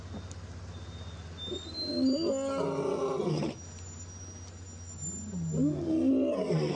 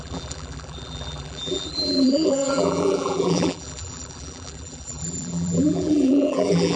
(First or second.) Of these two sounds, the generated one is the second